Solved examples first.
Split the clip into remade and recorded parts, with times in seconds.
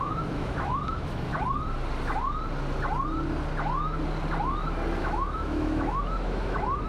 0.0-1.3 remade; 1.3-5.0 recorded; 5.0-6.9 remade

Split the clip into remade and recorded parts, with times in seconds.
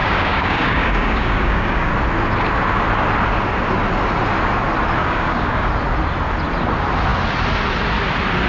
0.0-1.9 remade; 1.9-5.0 recorded; 5.0-5.7 remade; 5.7-8.5 recorded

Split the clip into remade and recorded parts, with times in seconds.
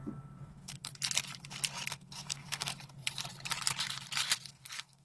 0.0-0.9 remade; 0.9-1.9 recorded; 1.9-2.7 remade; 2.7-4.5 recorded; 4.5-5.0 remade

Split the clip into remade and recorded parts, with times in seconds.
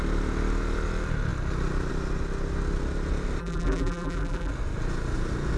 0.0-3.4 recorded; 3.4-4.5 remade; 4.5-5.6 recorded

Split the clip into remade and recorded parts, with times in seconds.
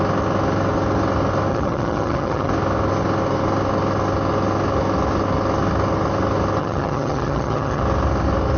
0.0-1.5 recorded; 1.5-2.5 remade; 2.5-6.6 recorded; 6.6-7.8 remade; 7.8-8.6 recorded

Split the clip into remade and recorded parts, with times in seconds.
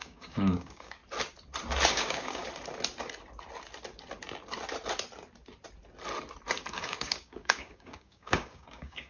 0.0-1.0 remade; 1.0-1.9 recorded; 1.9-2.4 remade; 2.4-6.7 recorded; 6.7-9.1 remade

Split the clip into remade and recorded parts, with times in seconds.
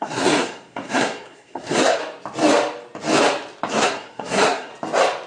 0.0-2.0 remade; 2.0-3.7 recorded; 3.7-4.7 remade; 4.7-5.3 recorded